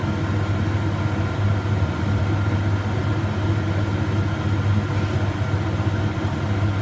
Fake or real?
real